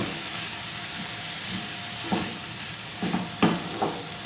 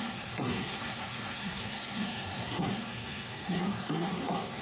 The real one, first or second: first